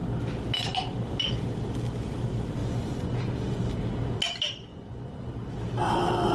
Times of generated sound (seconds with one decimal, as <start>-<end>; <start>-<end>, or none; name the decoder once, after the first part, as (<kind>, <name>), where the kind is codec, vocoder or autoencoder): 2.6-3.7 (vocoder, Vocos); 4.7-5.3